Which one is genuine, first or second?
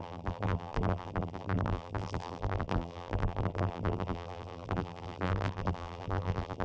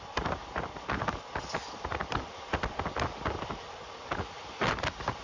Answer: second